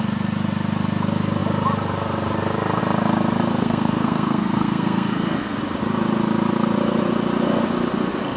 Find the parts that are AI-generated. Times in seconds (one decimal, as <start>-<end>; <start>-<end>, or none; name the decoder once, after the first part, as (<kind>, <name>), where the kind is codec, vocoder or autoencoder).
3.5-5.6 (codec, SNAC)